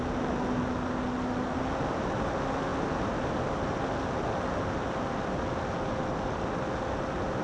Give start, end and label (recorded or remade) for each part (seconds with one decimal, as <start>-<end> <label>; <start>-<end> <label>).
0.0-7.4 recorded